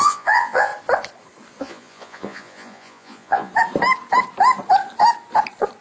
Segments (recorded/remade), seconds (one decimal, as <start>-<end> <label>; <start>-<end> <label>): 0.0-0.7 remade; 0.7-1.6 recorded; 1.6-3.5 remade; 3.5-5.8 recorded